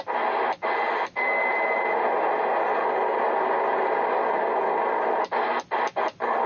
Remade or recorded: recorded